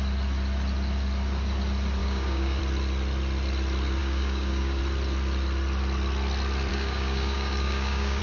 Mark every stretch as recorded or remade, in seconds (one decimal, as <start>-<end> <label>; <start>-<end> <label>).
0.0-2.0 recorded; 2.0-2.6 remade; 2.6-4.0 recorded; 4.0-4.8 remade; 4.8-6.7 recorded; 6.7-8.2 remade